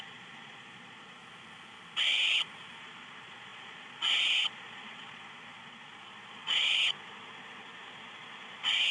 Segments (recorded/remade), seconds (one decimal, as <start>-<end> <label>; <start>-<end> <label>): 0.0-1.2 remade; 1.2-2.8 recorded; 2.8-8.9 remade